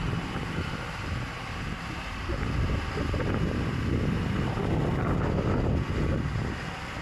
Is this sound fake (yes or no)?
yes